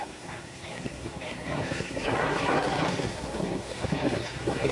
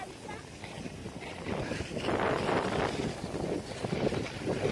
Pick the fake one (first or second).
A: first